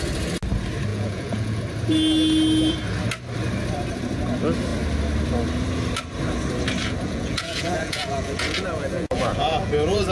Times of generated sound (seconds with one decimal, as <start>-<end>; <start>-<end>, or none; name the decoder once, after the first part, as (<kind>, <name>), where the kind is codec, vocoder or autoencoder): 0.9-1.6 (vocoder, Vocos); 7.0-10.1